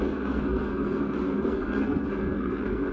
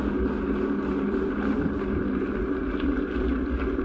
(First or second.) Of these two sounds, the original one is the second